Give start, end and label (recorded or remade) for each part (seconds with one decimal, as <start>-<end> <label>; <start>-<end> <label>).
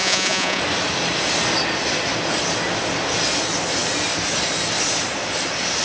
0.0-0.6 remade; 0.6-5.8 recorded